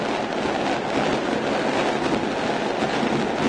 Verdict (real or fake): real